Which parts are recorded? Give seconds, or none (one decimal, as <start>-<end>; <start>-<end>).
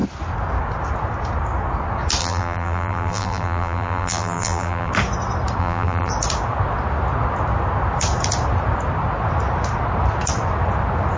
0.0-2.2; 4.9-5.6; 6.1-11.2